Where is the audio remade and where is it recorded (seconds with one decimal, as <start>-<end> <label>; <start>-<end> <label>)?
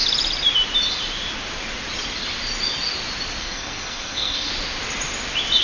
0.0-3.4 recorded; 3.4-4.5 remade; 4.5-5.6 recorded